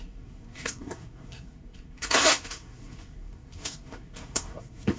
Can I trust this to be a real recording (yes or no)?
no